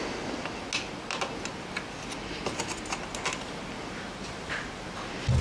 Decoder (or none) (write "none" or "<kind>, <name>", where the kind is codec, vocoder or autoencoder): none